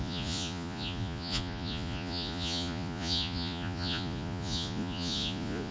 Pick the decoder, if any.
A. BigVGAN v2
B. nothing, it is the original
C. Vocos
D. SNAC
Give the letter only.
C